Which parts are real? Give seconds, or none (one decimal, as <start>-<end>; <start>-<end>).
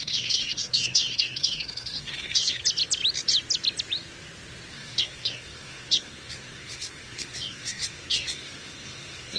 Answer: 2.6-4.7